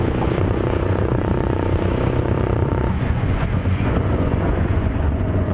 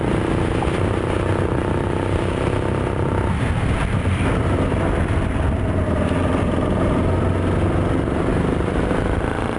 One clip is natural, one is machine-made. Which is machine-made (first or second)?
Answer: first